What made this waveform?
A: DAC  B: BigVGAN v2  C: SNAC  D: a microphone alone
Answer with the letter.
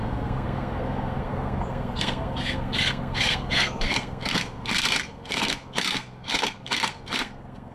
C